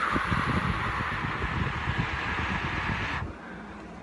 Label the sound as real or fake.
real